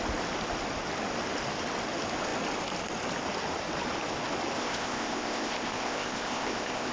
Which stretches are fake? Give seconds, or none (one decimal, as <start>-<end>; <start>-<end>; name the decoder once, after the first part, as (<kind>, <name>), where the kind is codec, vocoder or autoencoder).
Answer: 4.6-6.9 (codec, ZipCodec)